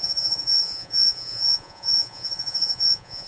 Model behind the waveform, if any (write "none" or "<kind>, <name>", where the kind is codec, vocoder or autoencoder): vocoder, Vocos